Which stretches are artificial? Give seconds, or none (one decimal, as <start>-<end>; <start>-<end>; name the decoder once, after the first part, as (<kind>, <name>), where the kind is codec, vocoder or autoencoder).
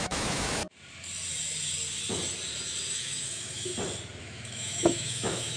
0.0-0.6 (autoencoder, DAC-VAE); 2.9-3.7; 4.2-5.6